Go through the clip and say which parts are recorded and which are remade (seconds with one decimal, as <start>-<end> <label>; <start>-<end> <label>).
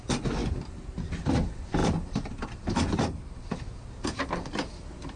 0.0-5.2 recorded